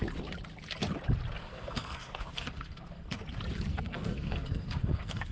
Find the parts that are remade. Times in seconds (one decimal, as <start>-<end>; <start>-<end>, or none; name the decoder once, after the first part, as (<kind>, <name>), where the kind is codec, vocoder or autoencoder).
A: 1.4-3.2 (codec, SNAC); 3.7-5.3